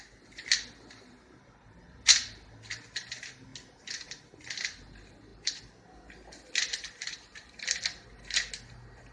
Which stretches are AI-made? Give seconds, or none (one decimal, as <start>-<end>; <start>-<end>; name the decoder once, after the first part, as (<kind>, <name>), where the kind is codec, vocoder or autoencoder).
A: none

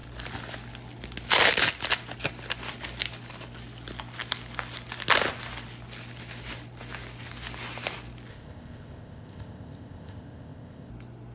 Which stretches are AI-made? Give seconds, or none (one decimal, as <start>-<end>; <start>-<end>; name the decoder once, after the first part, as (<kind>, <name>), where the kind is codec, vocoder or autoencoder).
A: 8.3-10.9 (codec, ZipCodec)